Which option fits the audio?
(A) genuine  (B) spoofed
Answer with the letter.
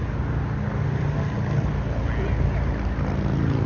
A